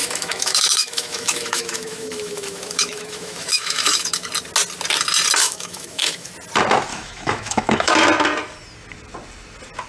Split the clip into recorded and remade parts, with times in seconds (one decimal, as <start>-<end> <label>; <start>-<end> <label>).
0.0-4.3 remade; 4.3-5.4 recorded; 5.4-6.3 remade; 6.3-6.9 recorded; 6.9-7.9 remade; 7.9-9.9 recorded